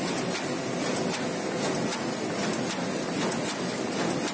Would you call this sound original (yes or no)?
yes